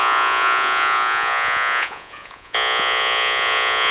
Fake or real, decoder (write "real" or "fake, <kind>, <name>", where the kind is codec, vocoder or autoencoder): fake, vocoder, Vocos